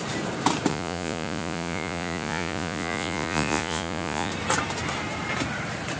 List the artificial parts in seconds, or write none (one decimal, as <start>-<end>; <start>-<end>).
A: 0.7-4.3